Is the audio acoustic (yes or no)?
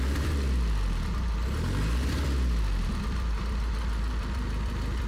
yes